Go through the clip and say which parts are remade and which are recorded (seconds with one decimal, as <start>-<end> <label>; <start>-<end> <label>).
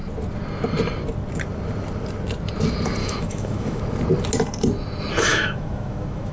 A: 0.0-3.0 recorded; 3.0-3.8 remade; 3.8-5.3 recorded; 5.3-6.3 remade